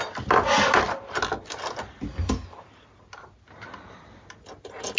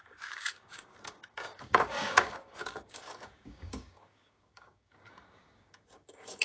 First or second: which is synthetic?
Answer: second